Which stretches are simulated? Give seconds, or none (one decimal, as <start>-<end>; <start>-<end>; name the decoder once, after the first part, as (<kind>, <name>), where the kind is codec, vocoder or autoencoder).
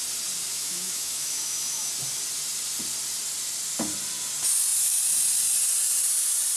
0.5-1.9 (autoencoder, DAC-VAE)